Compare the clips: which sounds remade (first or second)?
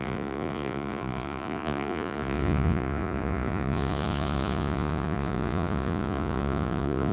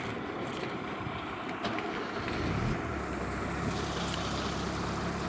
first